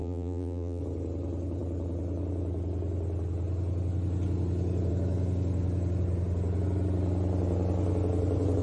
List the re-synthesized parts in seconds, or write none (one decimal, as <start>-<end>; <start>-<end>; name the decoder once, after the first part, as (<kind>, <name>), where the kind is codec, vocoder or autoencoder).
0.0-0.8 (vocoder, BigVGAN v2)